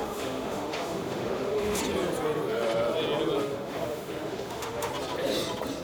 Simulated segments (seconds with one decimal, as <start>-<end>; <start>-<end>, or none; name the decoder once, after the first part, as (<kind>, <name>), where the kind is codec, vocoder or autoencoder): 0.0-1.8 (autoencoder, DAC-VAE); 3.4-4.9